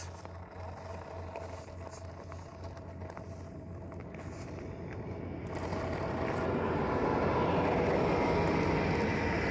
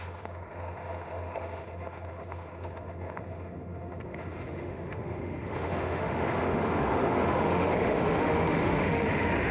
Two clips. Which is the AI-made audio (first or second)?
second